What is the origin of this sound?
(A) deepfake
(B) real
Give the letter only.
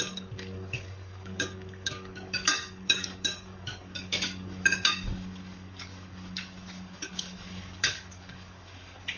A